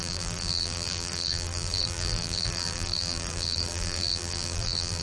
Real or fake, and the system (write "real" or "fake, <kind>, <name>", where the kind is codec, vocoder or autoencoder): fake, vocoder, BigVGAN v2